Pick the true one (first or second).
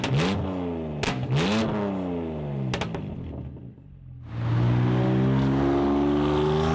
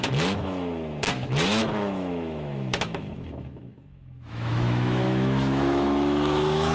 first